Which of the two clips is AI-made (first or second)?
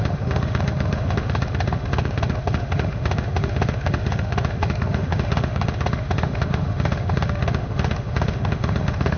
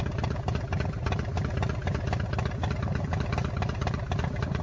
first